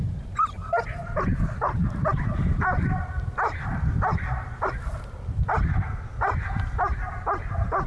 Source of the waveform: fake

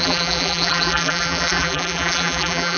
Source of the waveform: fake